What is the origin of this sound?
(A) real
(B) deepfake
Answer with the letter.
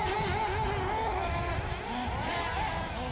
A